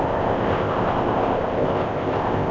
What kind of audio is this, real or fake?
fake